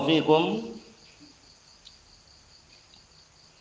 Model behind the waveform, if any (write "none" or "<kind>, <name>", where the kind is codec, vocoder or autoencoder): none